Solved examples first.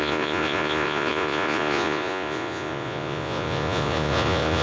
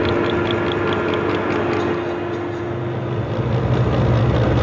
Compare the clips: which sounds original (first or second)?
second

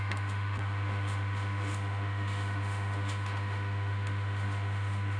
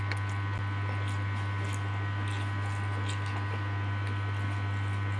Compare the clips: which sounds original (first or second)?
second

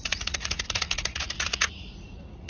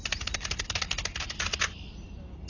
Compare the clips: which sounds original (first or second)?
second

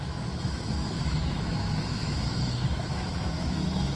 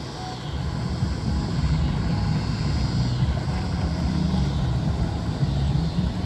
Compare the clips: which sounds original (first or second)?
second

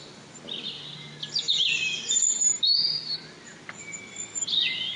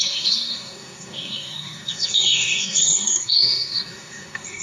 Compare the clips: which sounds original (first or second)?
first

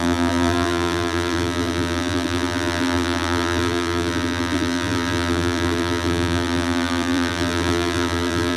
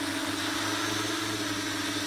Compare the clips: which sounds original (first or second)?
second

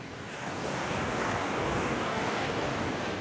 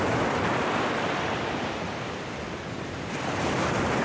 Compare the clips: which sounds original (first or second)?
second